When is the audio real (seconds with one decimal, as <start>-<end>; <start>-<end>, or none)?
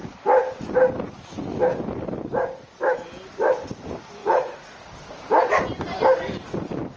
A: 0.0-4.2; 4.9-7.0